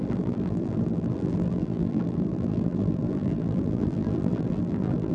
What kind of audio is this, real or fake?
fake